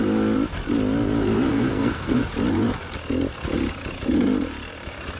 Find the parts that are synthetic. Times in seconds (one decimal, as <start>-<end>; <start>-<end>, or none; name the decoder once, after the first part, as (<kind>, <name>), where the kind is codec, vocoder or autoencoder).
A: 1.5-2.2 (codec, SNAC)